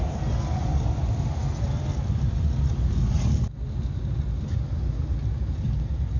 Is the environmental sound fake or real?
real